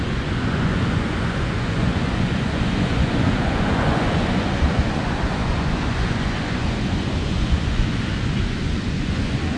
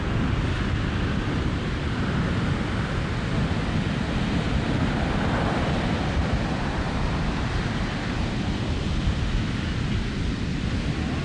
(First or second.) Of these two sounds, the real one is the second